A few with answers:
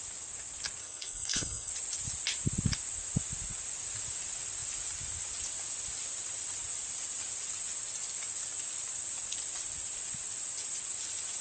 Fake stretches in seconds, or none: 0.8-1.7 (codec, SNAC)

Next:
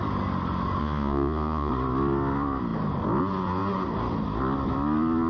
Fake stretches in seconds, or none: 0.8-1.7 (vocoder, Vocos)

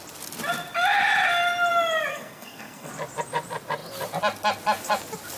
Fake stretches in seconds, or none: 2.1-2.9 (codec, SNAC)

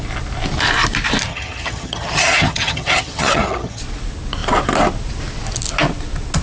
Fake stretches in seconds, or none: 1.3-3.8 (vocoder, HiFi-GAN)

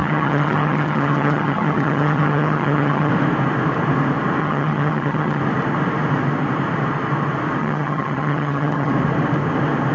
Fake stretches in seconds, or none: 0.0-3.1 (vocoder, HiFi-GAN); 4.4-5.4; 7.6-8.9

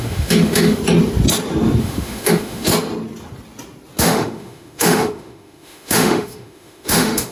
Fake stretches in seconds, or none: 0.0-0.8 (autoencoder, DAC-VAE); 1.8-2.7; 4.0-7.3

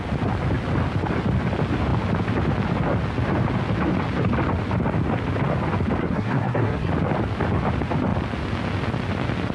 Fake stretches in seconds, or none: 6.0-6.9 (codec, SNAC)